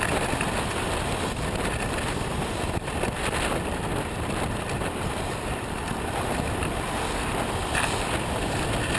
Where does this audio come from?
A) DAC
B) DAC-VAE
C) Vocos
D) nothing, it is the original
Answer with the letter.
D